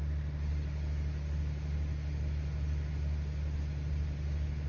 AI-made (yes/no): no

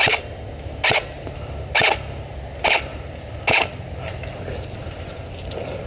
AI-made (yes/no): no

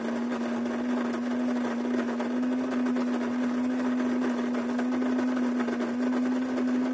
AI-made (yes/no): no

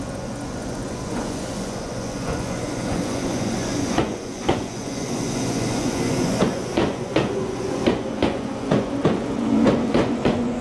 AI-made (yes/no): yes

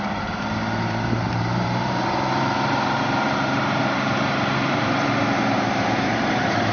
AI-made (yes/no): yes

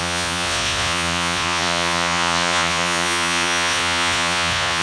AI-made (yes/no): yes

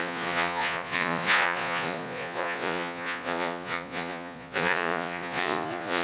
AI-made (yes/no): yes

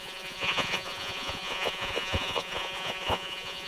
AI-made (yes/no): yes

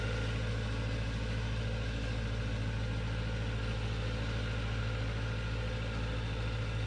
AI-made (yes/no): no